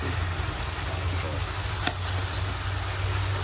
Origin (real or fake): real